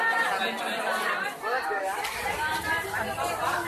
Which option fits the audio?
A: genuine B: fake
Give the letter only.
A